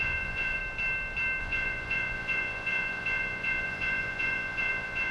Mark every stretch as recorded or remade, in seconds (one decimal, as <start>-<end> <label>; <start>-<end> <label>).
0.0-0.6 remade; 0.6-1.4 recorded; 1.4-5.1 remade